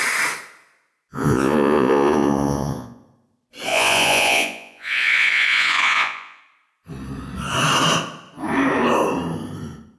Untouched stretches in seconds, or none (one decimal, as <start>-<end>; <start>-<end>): 0.0-1.1; 3.0-3.7; 6.4-10.0